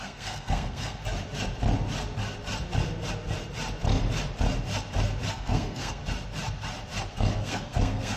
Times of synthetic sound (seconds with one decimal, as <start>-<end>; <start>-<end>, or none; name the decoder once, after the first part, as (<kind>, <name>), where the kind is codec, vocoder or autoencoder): 0.0-1.0 (codec, SNAC); 5.3-6.0; 7.1-8.2

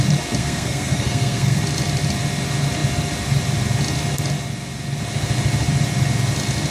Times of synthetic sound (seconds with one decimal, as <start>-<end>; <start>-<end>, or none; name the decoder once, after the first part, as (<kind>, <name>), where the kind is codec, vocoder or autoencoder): 0.4-1.6 (codec, SNAC)

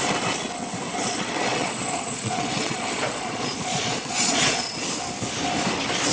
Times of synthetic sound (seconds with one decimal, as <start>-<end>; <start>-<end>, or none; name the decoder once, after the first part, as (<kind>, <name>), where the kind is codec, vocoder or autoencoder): 1.0-4.7 (vocoder, Vocos)

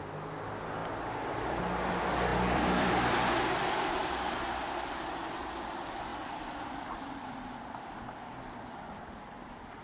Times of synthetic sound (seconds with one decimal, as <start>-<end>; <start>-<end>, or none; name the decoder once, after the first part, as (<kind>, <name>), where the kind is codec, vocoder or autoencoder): 0.8-1.6 (vocoder, BigVGAN v2); 2.3-3.1; 6.1-9.8